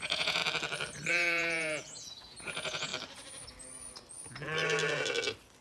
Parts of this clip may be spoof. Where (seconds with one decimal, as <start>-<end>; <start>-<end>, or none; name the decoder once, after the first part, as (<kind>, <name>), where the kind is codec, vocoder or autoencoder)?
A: 0.0-0.4 (vocoder, Vocos); 1.1-2.9